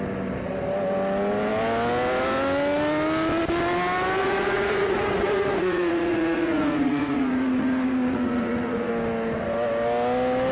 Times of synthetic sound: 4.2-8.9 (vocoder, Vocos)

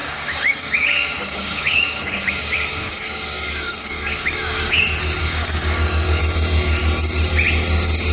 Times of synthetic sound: 0.0-4.8 (codec, DAC); 5.2-6.2